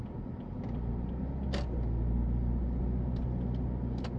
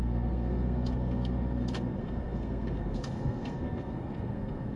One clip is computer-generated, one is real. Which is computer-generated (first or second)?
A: second